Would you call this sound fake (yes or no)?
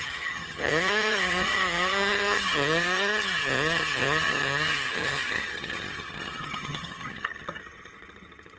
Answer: yes